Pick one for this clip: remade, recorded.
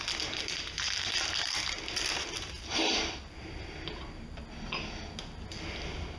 recorded